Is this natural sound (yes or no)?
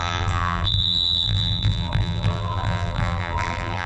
no